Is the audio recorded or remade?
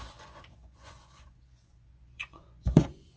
remade